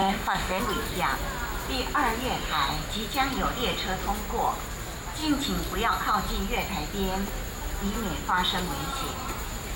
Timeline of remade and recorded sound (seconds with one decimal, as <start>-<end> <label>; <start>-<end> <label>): 0.0-0.6 remade; 0.6-9.8 recorded